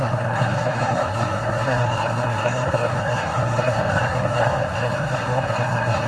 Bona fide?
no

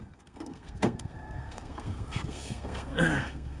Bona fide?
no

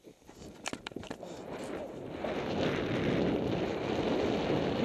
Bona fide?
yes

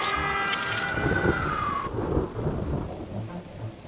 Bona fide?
yes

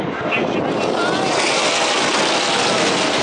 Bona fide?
yes